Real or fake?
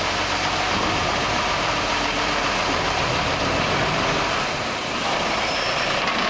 fake